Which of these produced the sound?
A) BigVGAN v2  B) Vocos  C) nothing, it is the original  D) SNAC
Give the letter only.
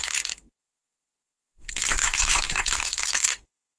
D